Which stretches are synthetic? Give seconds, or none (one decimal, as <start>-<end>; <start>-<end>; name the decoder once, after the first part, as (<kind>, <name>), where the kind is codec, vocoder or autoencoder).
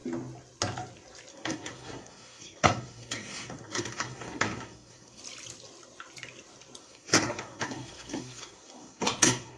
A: 1.3-5.2 (codec, SNAC); 6.8-9.6